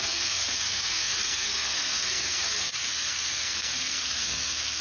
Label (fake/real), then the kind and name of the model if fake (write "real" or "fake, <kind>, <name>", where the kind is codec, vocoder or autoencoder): fake, codec, SNAC